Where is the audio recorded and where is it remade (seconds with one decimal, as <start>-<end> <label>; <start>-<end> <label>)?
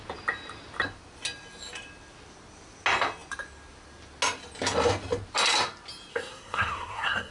0.0-6.1 recorded; 6.1-7.3 remade